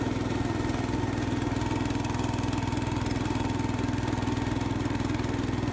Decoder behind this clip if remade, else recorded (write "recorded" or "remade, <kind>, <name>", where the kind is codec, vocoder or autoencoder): recorded